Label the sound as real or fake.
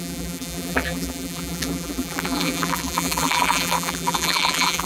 fake